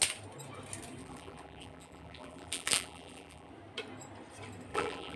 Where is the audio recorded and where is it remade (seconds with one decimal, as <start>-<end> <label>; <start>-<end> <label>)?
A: 0.0-1.0 recorded; 1.0-3.5 remade; 3.5-4.7 recorded; 4.7-5.2 remade